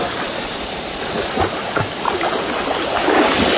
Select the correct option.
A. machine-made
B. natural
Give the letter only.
B